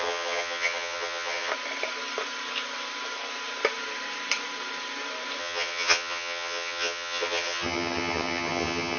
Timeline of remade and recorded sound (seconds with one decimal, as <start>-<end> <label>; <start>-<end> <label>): 0.0-1.5 remade; 1.5-5.4 recorded; 5.4-9.0 remade